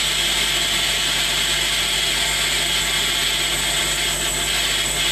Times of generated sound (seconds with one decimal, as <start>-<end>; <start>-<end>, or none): none